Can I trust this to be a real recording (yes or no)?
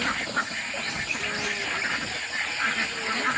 yes